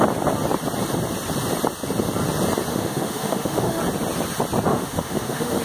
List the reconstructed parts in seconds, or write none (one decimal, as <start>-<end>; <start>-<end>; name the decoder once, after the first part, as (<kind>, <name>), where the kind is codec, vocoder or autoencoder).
2.7-3.8 (autoencoder, DAC-VAE); 4.7-5.6